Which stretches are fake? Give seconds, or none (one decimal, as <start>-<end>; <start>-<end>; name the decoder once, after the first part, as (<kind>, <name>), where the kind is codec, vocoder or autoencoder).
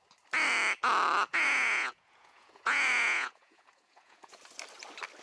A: 1.3-4.4 (vocoder, Vocos)